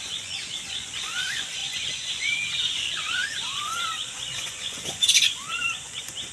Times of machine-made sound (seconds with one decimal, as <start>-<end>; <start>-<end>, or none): 0.0-6.3